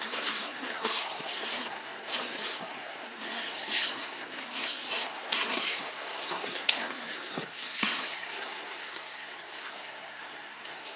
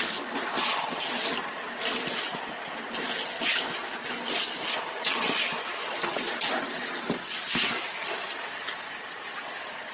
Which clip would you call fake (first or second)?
first